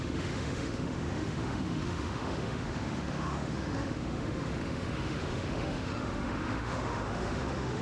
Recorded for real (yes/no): no